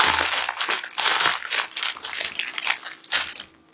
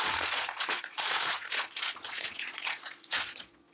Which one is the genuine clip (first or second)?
first